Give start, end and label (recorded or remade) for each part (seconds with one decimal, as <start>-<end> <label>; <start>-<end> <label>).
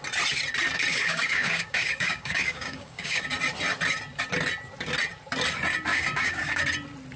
0.0-0.9 recorded; 0.9-3.2 remade; 3.2-5.9 recorded; 5.9-6.6 remade; 6.6-7.2 recorded